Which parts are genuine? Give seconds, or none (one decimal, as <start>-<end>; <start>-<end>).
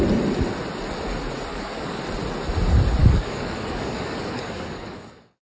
0.0-1.5; 2.0-3.0